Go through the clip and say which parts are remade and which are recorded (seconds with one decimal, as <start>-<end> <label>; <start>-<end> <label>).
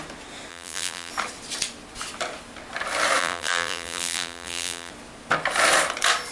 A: 0.0-0.5 recorded; 0.5-1.1 remade; 1.1-3.2 recorded; 3.2-4.9 remade; 4.9-6.3 recorded